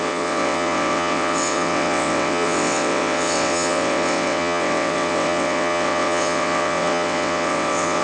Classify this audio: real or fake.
fake